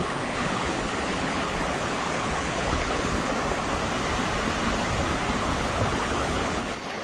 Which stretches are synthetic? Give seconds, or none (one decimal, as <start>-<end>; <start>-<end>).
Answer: 0.0-3.3; 5.4-7.0